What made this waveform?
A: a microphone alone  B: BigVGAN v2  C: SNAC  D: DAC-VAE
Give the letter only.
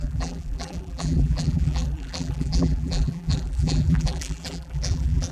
B